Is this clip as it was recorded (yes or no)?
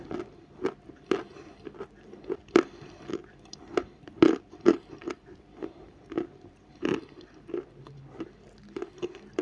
no